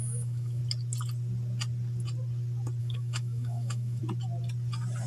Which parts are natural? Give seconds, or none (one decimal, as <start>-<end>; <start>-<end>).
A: 0.6-2.8; 4.0-5.1